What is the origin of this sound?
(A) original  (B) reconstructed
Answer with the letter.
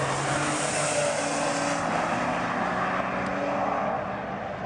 A